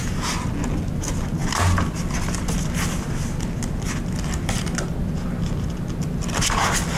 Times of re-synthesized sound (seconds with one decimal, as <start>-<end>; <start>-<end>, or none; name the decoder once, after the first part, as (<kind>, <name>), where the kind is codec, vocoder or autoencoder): none